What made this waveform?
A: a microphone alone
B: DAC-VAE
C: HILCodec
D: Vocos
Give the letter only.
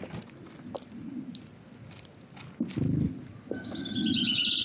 A